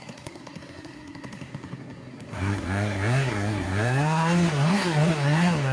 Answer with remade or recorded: remade